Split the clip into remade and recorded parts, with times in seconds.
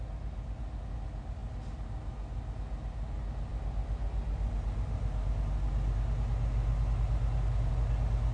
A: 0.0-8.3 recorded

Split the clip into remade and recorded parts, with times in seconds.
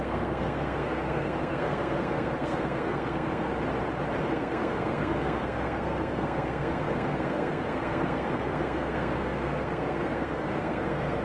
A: 0.0-3.5 remade; 3.5-4.2 recorded; 4.2-11.2 remade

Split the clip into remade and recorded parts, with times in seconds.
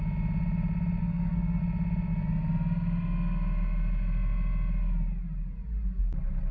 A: 0.0-1.0 recorded; 1.0-1.6 remade; 1.6-6.5 recorded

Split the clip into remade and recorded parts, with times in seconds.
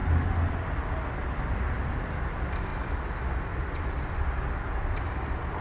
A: 0.0-5.6 recorded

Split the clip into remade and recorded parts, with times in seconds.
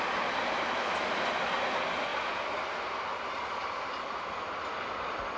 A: 0.0-5.4 recorded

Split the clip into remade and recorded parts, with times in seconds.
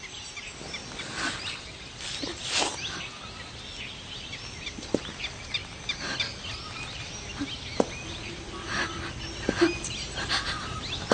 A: 0.0-11.1 recorded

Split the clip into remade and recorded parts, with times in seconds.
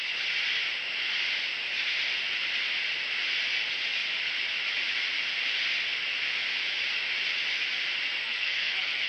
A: 0.0-8.2 recorded; 8.2-9.1 remade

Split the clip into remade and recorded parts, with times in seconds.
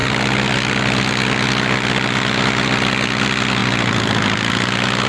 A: 0.0-5.1 recorded